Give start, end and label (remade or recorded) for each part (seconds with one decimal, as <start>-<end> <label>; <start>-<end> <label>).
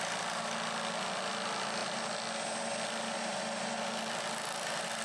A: 0.0-5.0 recorded